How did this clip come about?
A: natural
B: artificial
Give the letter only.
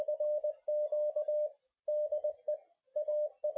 A